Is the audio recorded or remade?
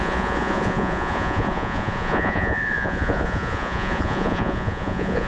remade